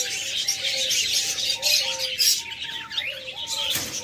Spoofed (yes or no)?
no